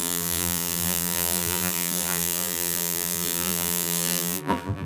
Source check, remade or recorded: remade